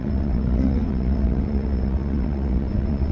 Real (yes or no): no